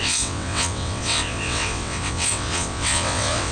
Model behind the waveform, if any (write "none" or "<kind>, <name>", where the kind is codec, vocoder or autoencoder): vocoder, WaveNeXt